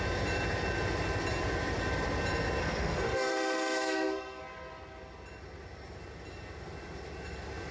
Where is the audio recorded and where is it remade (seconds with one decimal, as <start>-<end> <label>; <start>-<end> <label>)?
0.0-2.6 recorded; 2.6-4.4 remade; 4.4-7.7 recorded

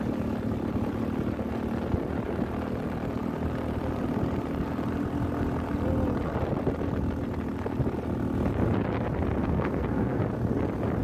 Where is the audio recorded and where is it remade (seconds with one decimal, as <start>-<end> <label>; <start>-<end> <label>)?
0.0-9.4 recorded; 9.4-10.2 remade; 10.2-11.0 recorded

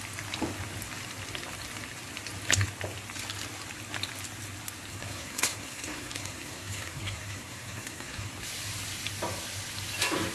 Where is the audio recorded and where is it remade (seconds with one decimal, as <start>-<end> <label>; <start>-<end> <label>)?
0.0-4.9 recorded; 4.9-8.3 remade; 8.3-10.3 recorded

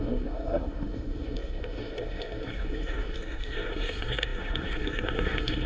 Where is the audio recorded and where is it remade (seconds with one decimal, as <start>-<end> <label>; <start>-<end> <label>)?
0.0-5.7 remade

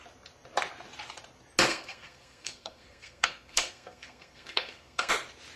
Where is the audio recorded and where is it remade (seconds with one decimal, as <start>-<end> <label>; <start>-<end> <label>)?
0.0-1.7 recorded; 1.7-5.1 remade; 5.1-5.6 recorded

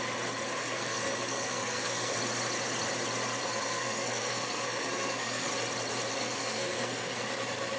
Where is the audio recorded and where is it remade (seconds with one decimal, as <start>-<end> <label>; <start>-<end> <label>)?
0.0-0.6 recorded; 0.6-2.2 remade; 2.2-3.4 recorded; 3.4-5.5 remade; 5.5-6.1 recorded; 6.1-7.3 remade; 7.3-7.8 recorded